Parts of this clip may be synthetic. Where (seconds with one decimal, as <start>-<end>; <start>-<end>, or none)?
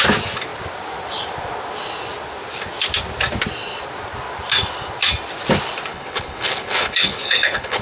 5.9-7.8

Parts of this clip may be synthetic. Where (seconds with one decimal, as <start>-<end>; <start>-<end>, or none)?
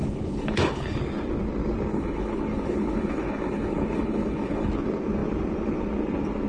0.0-1.0; 1.9-4.7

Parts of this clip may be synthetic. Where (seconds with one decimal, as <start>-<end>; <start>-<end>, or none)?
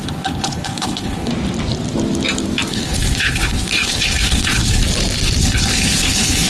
0.0-1.3; 2.7-4.8; 5.4-6.5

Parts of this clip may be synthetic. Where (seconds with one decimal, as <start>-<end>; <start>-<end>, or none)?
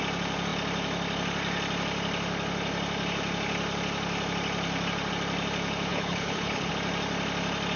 5.9-6.7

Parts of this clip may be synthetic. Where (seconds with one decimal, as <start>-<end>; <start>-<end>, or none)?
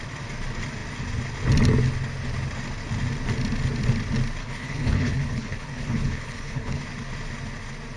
4.4-6.8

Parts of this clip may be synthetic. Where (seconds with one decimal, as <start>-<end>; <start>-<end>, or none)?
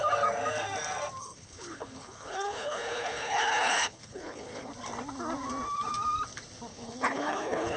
1.2-4.7; 6.7-7.8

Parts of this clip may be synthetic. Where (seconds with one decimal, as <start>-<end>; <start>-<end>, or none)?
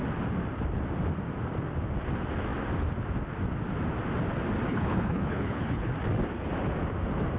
4.7-5.9